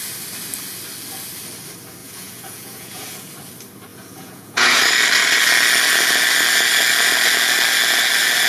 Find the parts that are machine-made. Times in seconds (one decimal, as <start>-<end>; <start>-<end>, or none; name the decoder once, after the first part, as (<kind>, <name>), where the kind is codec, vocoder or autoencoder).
2.0-3.3 (vocoder, Vocos); 3.9-4.8